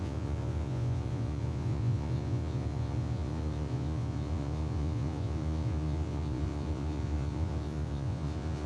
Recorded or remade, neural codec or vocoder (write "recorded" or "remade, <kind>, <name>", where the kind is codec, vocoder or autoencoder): remade, vocoder, Vocos